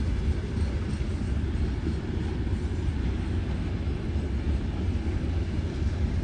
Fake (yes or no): no